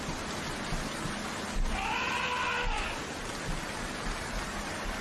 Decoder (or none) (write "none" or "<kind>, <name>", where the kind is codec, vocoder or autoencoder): none